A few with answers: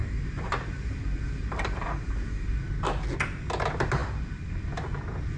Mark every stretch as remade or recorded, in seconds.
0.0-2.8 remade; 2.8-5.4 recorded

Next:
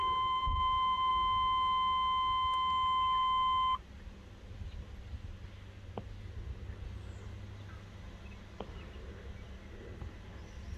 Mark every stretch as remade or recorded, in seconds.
0.0-1.1 remade; 1.1-10.8 recorded